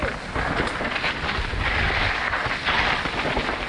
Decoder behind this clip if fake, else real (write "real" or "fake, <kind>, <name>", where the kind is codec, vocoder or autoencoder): real